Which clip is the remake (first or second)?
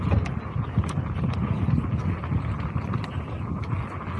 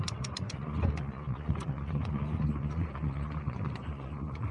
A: second